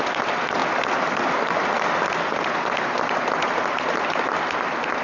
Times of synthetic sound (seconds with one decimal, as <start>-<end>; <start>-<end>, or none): none